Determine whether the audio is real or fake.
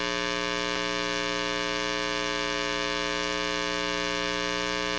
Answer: real